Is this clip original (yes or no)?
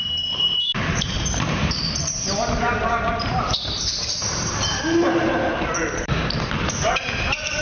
no